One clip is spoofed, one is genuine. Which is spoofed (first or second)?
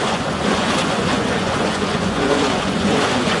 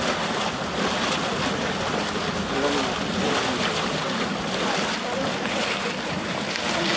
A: first